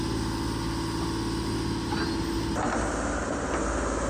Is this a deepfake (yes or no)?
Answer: no